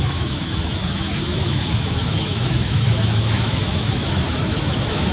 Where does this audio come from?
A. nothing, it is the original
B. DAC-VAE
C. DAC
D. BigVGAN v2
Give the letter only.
B